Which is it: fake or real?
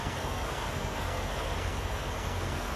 fake